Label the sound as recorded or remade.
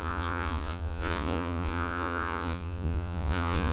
remade